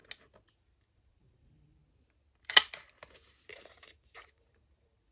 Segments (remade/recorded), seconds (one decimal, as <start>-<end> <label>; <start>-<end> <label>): 0.0-0.5 recorded; 0.5-1.8 remade; 1.8-3.5 recorded; 3.5-5.1 remade